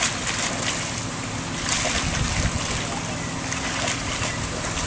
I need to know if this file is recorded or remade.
recorded